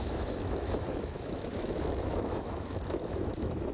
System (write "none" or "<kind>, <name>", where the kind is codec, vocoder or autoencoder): autoencoder, DAC-VAE